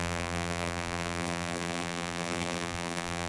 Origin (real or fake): fake